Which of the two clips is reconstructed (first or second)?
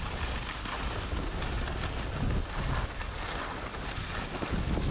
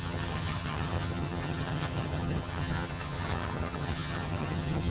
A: second